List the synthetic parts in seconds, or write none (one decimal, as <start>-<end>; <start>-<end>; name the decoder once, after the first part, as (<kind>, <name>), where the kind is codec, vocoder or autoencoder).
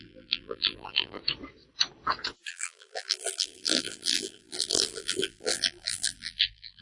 0.0-1.2 (vocoder, BigVGAN v2); 2.5-6.8